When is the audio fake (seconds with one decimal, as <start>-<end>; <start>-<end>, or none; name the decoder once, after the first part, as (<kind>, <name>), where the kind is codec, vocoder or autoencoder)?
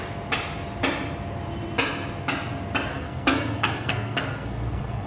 2.9-5.1 (codec, SNAC)